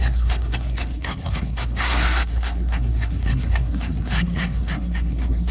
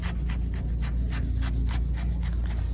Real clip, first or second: second